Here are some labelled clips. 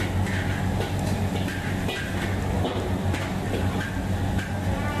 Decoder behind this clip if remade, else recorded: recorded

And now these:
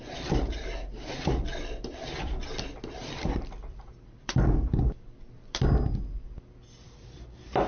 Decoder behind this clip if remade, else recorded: remade, vocoder, BigVGAN v2